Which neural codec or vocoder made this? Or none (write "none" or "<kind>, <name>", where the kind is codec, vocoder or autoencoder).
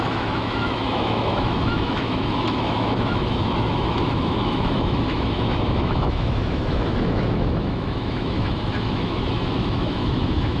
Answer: autoencoder, DAC-VAE